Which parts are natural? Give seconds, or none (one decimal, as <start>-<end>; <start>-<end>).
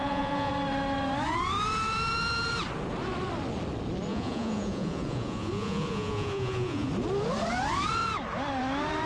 0.5-4.1; 6.9-9.1